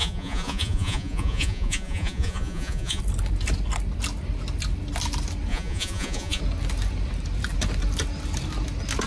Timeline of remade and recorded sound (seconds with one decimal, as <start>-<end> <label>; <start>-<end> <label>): 0.0-3.0 remade; 3.0-5.5 recorded; 5.5-6.4 remade; 6.4-9.1 recorded